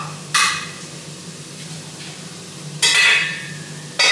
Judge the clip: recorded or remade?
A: recorded